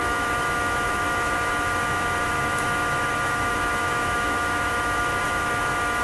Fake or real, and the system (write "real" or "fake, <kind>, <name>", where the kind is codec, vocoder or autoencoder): fake, autoencoder, DAC-VAE